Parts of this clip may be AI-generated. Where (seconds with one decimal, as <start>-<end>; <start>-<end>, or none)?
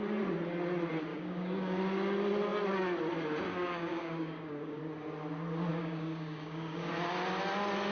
1.1-1.8; 3.5-4.8; 5.7-6.9